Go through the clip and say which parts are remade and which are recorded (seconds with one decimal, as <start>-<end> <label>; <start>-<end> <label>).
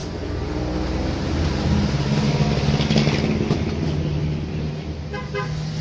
0.0-5.8 recorded